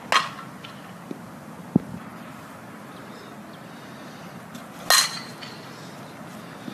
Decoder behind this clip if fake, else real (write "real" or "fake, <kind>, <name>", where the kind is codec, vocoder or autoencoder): real